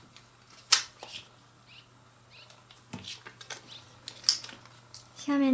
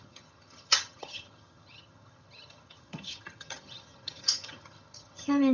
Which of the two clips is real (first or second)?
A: first